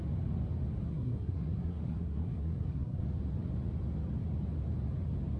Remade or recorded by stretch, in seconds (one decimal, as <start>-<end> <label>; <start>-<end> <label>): 0.0-0.9 recorded; 0.9-3.0 remade; 3.0-5.4 recorded